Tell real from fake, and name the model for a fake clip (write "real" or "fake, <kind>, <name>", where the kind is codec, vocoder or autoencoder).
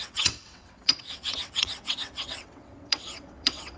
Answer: fake, vocoder, WaveNeXt